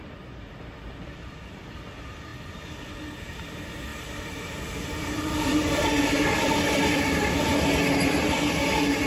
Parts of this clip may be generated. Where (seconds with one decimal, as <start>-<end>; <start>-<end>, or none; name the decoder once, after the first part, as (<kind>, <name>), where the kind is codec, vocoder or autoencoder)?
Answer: 3.9-7.3 (vocoder, BigVGAN v2)